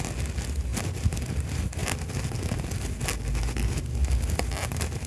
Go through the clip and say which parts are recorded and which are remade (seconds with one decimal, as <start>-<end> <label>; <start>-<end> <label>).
0.0-5.1 recorded